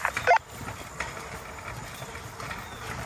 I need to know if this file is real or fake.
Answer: real